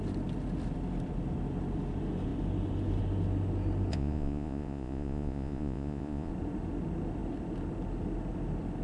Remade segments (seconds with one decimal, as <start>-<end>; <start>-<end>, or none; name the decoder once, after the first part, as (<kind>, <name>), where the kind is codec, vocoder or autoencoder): 3.9-6.3 (vocoder, Vocos)